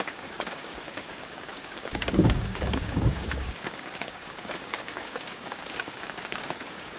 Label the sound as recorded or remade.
remade